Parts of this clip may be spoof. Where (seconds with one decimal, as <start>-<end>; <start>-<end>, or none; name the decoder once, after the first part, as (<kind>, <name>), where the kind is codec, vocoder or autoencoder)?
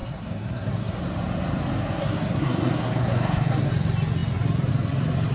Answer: 0.0-1.0 (codec, SNAC); 2.0-3.7